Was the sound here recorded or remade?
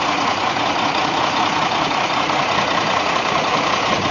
remade